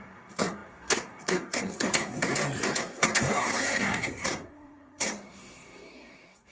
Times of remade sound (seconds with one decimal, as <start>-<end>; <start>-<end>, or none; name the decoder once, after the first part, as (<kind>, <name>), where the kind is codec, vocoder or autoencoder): 0.0-2.3 (codec, SNAC); 2.8-6.5